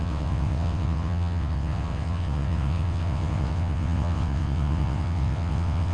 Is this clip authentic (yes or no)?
no